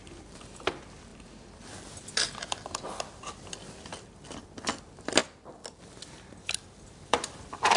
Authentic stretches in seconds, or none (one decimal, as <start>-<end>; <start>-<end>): 5.2-5.8